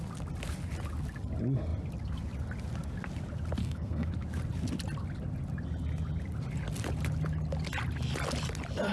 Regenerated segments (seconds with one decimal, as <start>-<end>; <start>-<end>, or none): 3.6-4.1